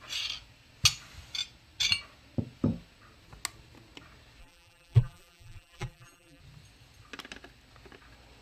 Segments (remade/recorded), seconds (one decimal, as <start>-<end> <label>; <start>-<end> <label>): 0.0-4.4 recorded; 4.4-6.4 remade; 6.4-8.4 recorded